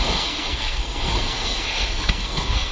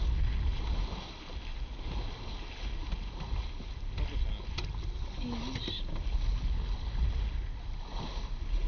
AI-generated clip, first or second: first